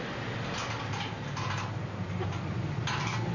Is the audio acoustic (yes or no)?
yes